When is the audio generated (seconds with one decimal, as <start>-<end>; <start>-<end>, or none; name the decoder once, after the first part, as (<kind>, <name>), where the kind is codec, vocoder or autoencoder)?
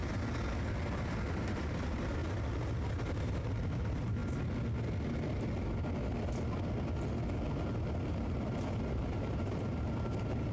1.3-2.2 (vocoder, BigVGAN v2); 3.1-4.2; 8.0-10.5